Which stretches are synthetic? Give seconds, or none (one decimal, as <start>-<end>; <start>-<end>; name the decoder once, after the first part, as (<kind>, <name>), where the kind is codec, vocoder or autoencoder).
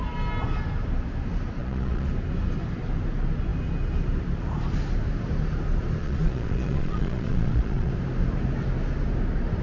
1.6-2.1 (vocoder, Vocos); 6.0-7.9